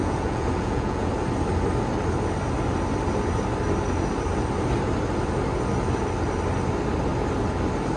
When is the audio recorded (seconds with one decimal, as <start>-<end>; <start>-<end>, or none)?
1.1-8.0